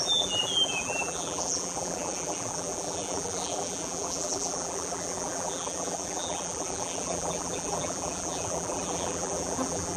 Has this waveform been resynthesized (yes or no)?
yes